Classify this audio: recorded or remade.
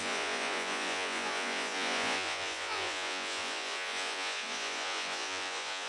remade